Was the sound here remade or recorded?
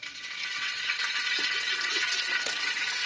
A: remade